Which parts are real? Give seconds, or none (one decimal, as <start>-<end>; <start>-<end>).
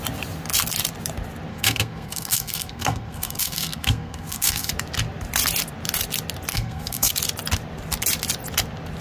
0.0-1.5; 4.7-6.5; 7.1-9.0